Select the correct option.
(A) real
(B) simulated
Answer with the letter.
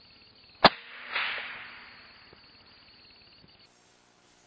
A